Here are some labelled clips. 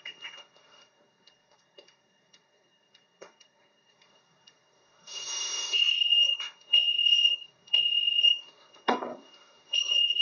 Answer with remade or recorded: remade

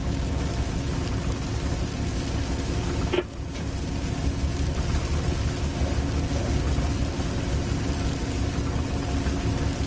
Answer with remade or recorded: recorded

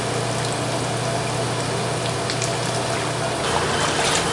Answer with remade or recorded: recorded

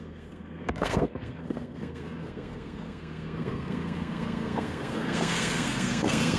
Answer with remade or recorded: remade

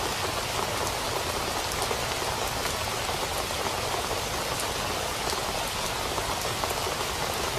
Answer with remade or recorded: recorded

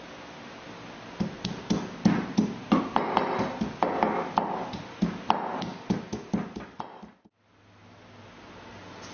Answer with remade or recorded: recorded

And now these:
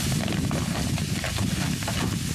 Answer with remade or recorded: recorded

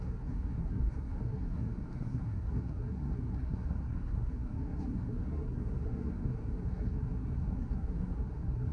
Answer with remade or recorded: remade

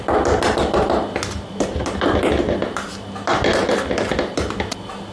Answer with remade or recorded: recorded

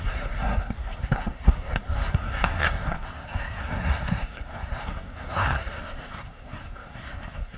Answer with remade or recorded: remade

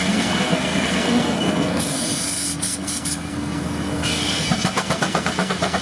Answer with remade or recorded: remade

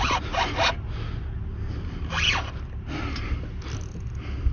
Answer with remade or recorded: recorded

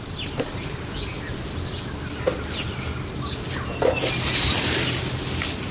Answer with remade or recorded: recorded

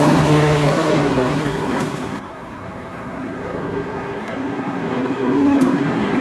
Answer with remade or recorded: remade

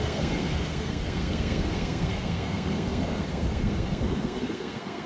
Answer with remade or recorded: remade